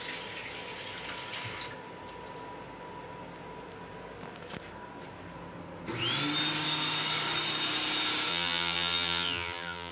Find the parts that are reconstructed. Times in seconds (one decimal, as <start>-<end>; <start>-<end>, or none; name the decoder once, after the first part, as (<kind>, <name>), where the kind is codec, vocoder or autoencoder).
8.3-9.9 (vocoder, BigVGAN v2)